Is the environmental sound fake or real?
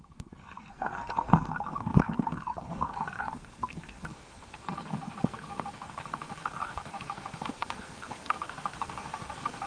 fake